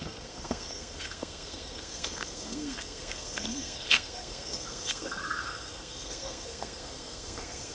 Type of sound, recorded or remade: remade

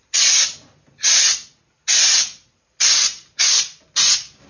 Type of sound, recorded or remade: recorded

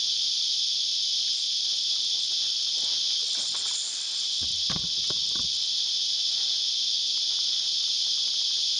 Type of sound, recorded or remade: recorded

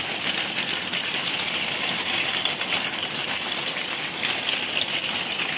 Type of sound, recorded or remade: recorded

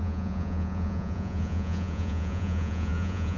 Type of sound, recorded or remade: remade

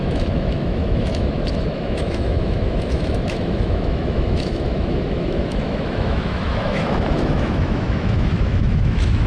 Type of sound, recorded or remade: remade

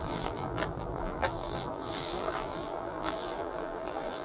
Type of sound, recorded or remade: remade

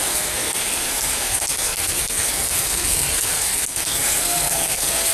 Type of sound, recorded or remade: remade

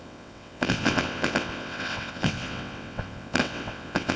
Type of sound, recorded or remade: remade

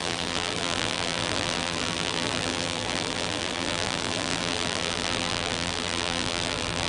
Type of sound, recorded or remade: remade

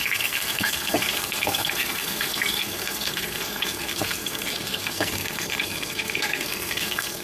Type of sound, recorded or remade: remade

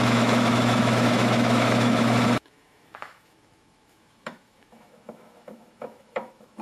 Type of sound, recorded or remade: remade